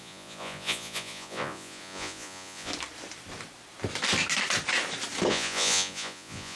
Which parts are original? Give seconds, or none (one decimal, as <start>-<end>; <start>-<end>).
2.7-5.3